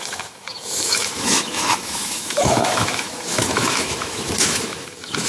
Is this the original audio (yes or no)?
no